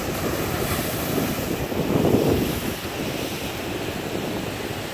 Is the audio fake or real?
real